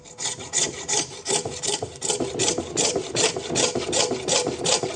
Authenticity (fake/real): real